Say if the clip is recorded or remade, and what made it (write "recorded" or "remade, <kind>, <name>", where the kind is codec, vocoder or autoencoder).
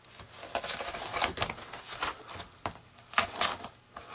recorded